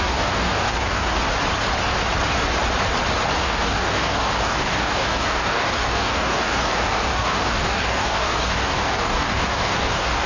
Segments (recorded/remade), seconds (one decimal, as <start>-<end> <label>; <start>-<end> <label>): 0.0-1.2 remade; 1.2-3.4 recorded; 3.4-10.3 remade